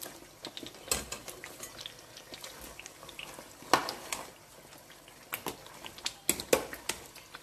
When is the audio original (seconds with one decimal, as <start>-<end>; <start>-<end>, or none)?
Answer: 0.0-7.4